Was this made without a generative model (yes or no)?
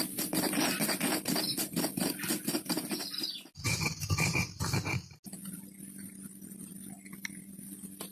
yes